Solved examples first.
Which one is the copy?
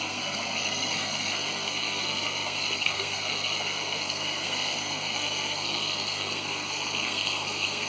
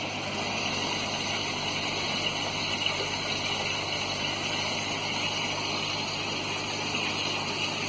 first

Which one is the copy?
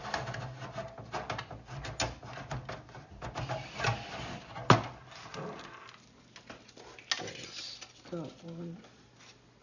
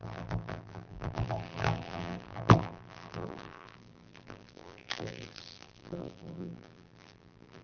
second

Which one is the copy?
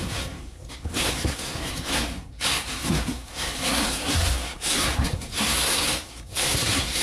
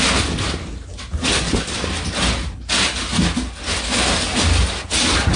first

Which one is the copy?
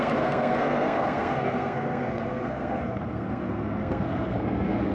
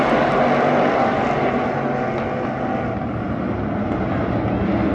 first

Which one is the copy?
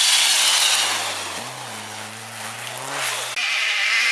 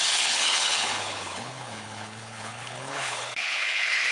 second